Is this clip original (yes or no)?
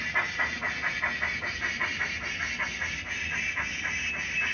yes